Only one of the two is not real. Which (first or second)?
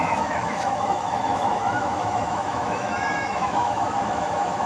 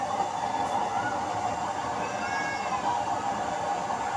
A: first